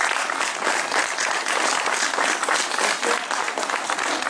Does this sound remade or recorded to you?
recorded